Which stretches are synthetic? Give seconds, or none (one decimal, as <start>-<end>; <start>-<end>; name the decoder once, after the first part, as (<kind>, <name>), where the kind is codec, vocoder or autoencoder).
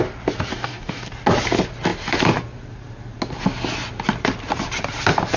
0.5-1.1 (codec, DAC)